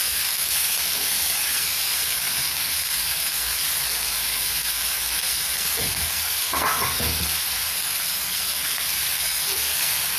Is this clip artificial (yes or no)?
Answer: yes